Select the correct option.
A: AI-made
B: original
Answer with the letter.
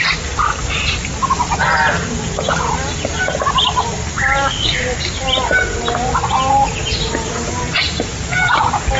B